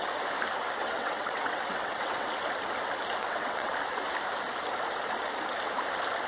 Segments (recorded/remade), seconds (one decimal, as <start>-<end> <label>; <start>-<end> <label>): 0.0-0.8 recorded; 0.8-2.3 remade; 2.3-3.2 recorded; 3.2-3.7 remade; 3.7-6.3 recorded